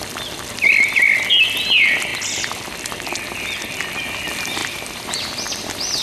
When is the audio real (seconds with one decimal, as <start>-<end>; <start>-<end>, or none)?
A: 0.0-4.6; 5.3-6.0